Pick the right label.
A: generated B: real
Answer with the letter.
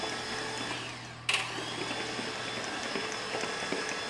B